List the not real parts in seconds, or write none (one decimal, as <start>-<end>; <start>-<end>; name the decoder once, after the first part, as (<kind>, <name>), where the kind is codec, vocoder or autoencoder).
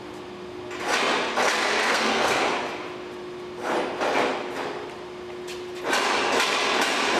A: 1.8-2.4 (codec, SNAC)